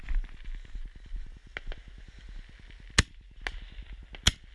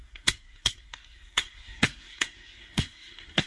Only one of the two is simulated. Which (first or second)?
second